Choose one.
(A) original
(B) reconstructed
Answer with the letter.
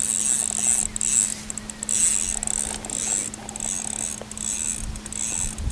A